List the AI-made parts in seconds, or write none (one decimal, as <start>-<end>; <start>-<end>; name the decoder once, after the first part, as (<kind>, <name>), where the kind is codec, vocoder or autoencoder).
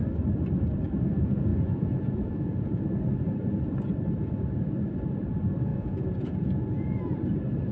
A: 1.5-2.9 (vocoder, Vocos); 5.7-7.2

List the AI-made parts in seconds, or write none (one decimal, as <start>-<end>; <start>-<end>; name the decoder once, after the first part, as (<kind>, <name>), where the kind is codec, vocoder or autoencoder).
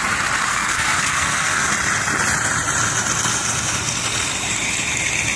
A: 0.5-1.7 (codec, SNAC)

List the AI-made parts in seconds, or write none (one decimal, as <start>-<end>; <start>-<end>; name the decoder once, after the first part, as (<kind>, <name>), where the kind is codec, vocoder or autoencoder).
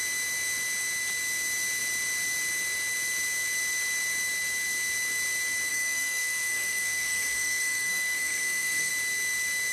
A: 5.7-8.9 (codec, SNAC)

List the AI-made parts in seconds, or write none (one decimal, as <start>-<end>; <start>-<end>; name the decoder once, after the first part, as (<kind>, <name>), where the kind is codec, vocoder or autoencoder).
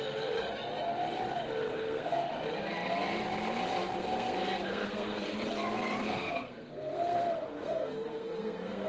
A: 1.7-2.3 (codec, SNAC); 4.0-5.3; 6.0-8.9